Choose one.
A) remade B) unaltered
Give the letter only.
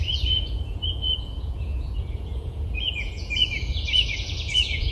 A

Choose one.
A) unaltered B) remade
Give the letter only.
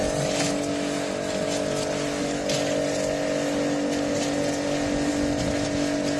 A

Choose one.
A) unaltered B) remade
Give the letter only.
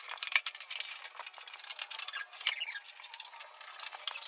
A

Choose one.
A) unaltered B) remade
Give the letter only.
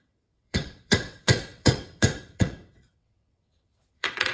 B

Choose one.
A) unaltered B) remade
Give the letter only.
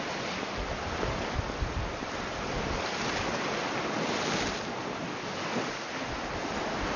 A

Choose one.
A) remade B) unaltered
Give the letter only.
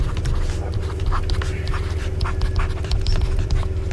A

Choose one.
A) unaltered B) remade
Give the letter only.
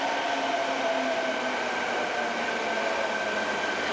A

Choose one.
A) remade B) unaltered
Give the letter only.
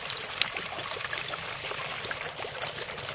B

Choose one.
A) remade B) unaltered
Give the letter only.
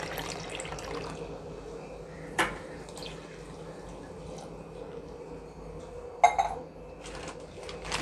B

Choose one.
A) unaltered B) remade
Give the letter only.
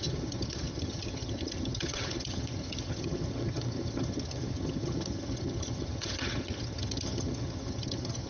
B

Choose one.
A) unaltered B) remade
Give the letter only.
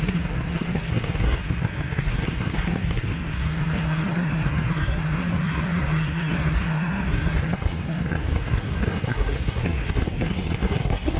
B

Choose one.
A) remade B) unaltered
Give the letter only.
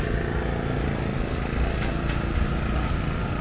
B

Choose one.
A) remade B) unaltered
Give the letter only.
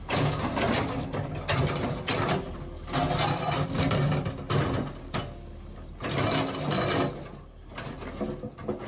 B